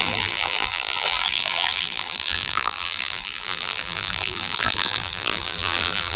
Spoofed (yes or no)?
yes